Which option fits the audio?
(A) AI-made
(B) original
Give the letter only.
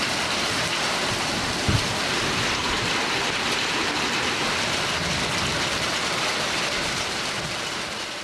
B